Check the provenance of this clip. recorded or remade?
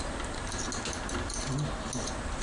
recorded